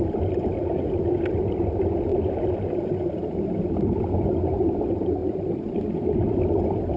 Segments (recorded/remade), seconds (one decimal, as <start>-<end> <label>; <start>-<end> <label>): 0.0-5.2 recorded; 5.2-6.3 remade; 6.3-7.0 recorded